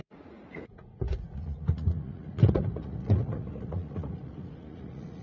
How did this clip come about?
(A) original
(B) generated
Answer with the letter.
B